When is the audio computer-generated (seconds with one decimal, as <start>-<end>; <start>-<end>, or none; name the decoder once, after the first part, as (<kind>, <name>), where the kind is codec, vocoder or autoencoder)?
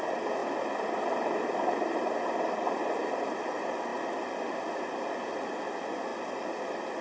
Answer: none